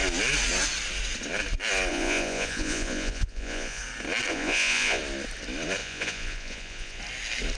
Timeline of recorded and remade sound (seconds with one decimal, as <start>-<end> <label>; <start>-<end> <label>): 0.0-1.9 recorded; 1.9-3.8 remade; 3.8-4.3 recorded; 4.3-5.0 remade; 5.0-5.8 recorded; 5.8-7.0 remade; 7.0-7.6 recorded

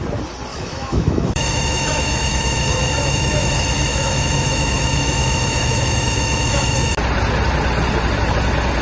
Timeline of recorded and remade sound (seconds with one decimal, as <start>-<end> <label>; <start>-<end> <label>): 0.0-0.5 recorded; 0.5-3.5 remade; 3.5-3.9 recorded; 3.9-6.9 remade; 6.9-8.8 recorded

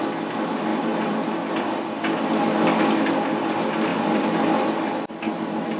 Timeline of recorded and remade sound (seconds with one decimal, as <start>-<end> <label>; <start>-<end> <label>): 0.0-0.7 recorded; 0.7-2.3 remade; 2.3-5.8 recorded